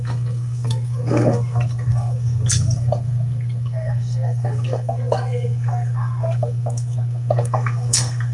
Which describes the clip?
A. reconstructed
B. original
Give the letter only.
A